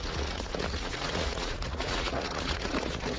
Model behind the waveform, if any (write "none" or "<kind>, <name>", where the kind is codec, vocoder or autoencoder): vocoder, Vocos